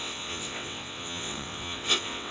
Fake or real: fake